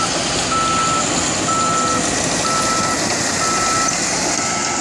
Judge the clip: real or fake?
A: real